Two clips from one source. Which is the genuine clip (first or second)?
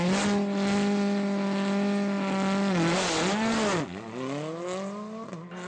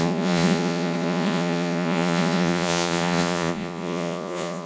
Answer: first